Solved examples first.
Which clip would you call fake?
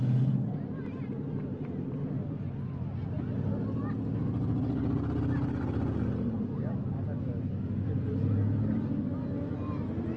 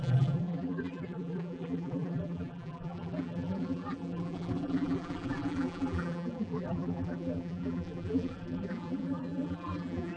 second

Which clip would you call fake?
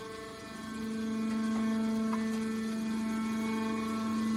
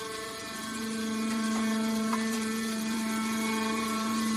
second